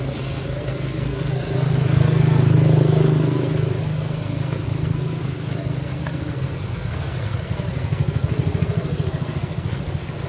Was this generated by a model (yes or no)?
yes